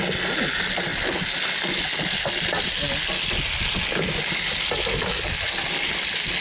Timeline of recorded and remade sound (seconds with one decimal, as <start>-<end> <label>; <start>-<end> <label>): 0.0-6.4 recorded